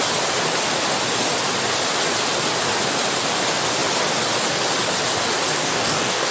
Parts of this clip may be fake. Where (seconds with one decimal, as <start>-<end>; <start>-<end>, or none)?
5.6-6.3